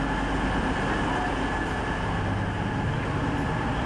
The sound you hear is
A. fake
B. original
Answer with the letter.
B